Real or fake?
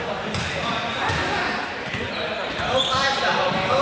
fake